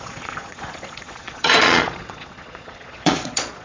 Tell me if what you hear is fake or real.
fake